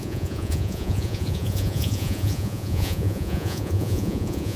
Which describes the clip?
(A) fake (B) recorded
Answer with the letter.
A